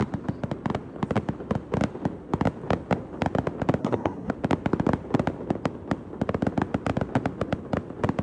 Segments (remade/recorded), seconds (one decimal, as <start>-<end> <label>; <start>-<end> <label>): 0.0-3.8 recorded; 3.8-4.3 remade; 4.3-8.2 recorded